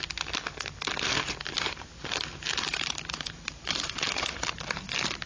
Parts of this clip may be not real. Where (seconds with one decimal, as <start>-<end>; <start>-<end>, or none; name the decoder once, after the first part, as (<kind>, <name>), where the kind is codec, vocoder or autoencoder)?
1.5-4.3 (vocoder, BigVGAN v2)

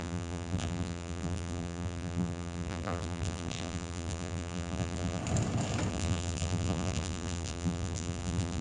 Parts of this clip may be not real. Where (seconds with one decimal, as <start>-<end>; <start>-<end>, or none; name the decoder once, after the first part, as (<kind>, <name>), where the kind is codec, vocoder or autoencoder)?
0.0-5.2 (vocoder, BigVGAN v2); 5.9-8.6

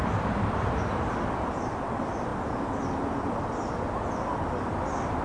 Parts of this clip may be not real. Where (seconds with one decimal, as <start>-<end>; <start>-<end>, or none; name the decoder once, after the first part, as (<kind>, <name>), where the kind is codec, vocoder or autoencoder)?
0.0-0.8 (vocoder, BigVGAN v2)